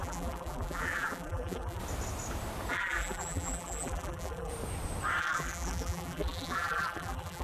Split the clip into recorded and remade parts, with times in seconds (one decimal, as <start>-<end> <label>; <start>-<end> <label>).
0.0-1.8 remade; 1.8-2.7 recorded; 2.7-4.5 remade; 4.5-5.2 recorded; 5.2-7.4 remade